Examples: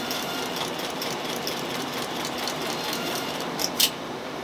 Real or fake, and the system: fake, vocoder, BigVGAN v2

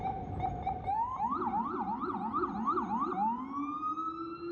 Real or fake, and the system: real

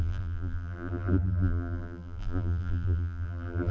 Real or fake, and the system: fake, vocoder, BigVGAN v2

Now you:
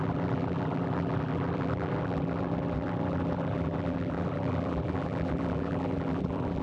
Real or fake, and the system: fake, vocoder, BigVGAN v2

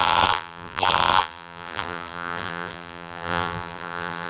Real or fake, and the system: fake, vocoder, BigVGAN v2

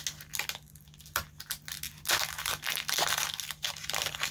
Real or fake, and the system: real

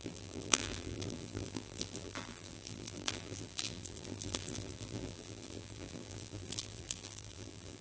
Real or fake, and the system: fake, vocoder, BigVGAN v2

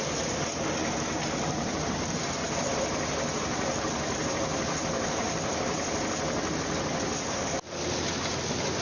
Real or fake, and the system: real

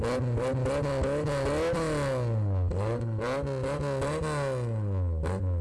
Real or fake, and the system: real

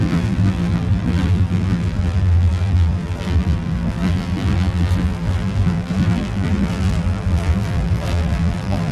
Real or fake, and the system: fake, vocoder, BigVGAN v2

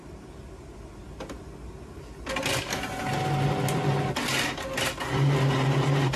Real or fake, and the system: real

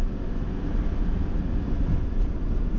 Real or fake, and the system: real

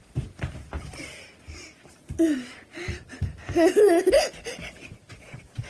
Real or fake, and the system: fake, vocoder, BigVGAN v2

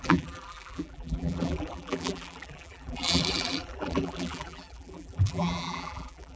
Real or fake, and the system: fake, vocoder, BigVGAN v2